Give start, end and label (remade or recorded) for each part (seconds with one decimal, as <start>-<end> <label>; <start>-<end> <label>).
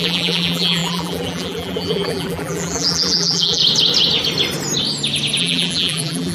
0.0-3.6 remade; 3.6-5.4 recorded; 5.4-6.3 remade